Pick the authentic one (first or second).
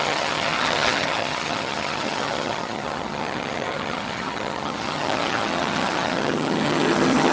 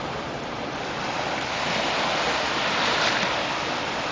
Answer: second